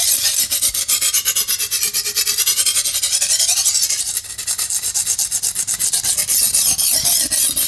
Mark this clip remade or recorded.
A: recorded